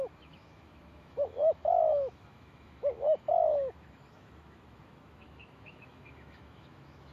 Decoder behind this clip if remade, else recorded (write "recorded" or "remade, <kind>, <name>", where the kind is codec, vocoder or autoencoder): remade, autoencoder, DAC-VAE